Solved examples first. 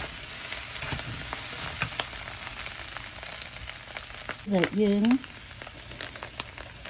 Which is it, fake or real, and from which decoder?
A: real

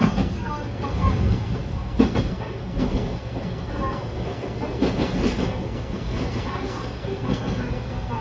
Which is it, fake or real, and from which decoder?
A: fake, codec, SNAC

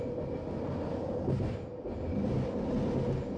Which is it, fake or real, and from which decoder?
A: real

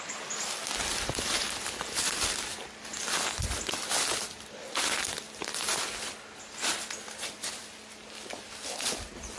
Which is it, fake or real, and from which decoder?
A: real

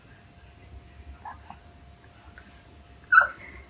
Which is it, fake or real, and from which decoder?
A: real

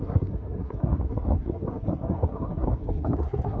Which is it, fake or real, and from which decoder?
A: fake, codec, SNAC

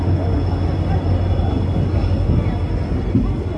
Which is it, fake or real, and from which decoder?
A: real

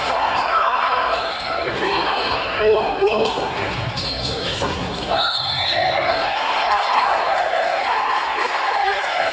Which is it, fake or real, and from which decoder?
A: fake, codec, SNAC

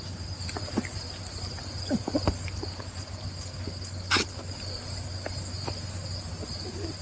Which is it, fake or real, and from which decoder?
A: real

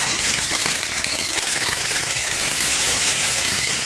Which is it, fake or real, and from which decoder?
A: fake, codec, SNAC